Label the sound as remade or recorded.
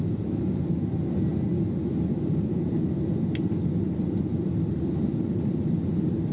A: recorded